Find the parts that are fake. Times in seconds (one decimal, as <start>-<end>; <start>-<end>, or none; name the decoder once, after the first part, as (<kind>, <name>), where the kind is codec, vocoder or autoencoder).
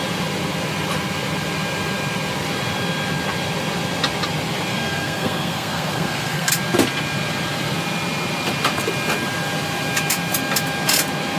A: 4.7-6.5 (codec, SNAC)